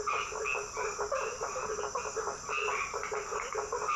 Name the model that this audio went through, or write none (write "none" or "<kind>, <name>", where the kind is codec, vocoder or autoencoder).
none